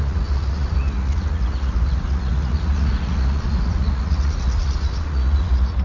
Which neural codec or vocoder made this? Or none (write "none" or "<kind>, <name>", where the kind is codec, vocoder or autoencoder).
vocoder, Vocos